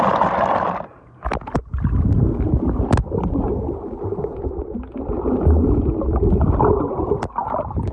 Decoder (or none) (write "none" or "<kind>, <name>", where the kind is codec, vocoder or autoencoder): none